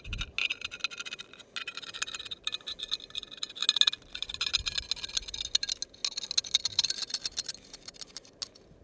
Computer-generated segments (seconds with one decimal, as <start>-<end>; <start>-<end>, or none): none